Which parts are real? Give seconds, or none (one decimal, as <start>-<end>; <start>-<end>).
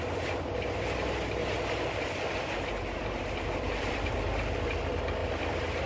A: 0.0-1.4; 4.1-5.9